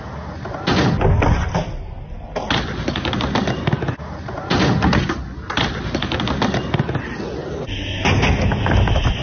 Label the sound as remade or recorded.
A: recorded